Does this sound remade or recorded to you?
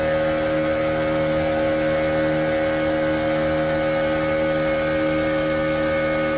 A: recorded